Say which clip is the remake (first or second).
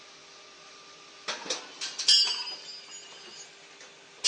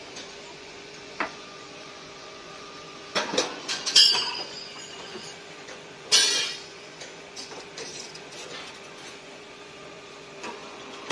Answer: second